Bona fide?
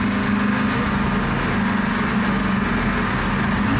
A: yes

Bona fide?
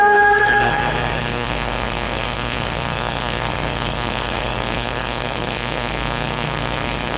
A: no